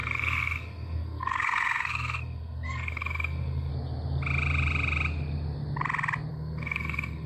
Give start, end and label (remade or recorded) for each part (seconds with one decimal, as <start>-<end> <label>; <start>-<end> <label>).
0.0-3.7 remade; 3.7-6.3 recorded; 6.3-7.3 remade